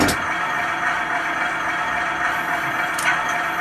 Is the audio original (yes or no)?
yes